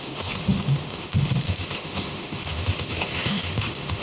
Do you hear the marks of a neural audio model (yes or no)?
yes